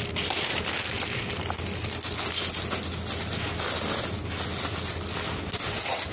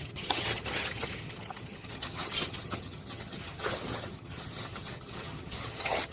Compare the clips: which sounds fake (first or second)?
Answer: second